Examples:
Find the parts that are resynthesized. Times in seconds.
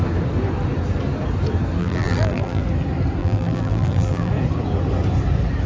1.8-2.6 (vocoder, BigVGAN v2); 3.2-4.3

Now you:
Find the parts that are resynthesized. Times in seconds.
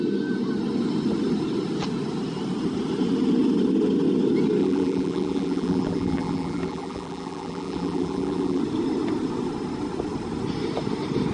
4.6-8.6 (vocoder, BigVGAN v2)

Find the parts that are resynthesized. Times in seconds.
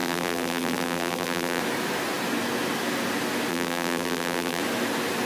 0.0-1.6 (vocoder, BigVGAN v2); 3.5-4.6